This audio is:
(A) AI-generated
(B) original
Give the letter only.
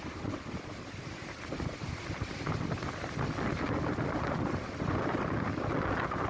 B